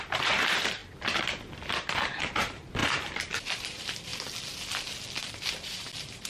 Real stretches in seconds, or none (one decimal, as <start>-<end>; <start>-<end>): 0.8-1.7; 2.8-3.4; 4.1-5.4